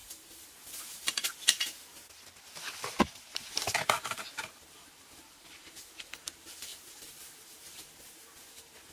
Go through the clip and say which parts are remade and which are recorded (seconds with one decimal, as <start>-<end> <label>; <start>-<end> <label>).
0.0-1.2 remade; 1.2-3.0 recorded; 3.0-8.9 remade